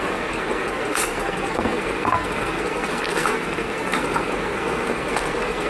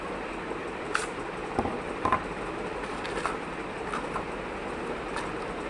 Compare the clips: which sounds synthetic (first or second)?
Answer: first